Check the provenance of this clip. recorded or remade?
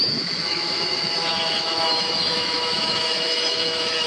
remade